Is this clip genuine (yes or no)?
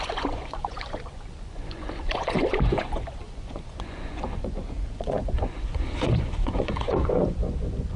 no